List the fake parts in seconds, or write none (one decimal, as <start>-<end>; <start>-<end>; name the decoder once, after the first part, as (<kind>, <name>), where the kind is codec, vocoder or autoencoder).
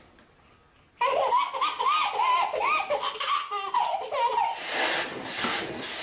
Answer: none